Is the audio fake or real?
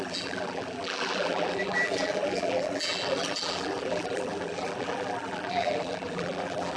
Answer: fake